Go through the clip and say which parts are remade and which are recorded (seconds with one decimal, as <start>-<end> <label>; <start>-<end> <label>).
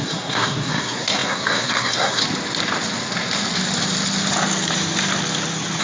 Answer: 0.0-2.2 remade; 2.2-5.8 recorded